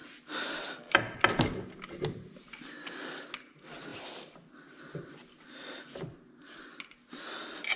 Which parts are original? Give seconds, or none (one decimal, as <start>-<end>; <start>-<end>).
0.0-7.8

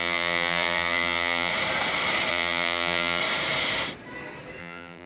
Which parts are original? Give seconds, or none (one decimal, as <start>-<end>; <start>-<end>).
1.5-2.3; 3.2-4.6

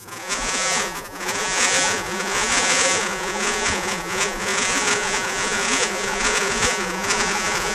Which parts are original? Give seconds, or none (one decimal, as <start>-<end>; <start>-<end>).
none

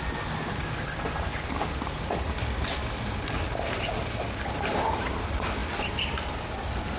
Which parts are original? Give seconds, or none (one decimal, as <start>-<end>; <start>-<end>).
0.0-7.0

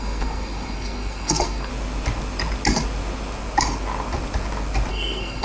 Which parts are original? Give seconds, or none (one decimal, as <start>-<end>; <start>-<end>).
1.7-4.9

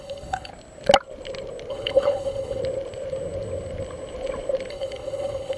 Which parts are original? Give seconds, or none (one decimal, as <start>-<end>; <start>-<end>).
0.5-1.7; 2.6-4.7